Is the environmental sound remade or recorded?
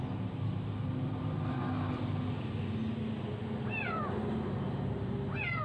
recorded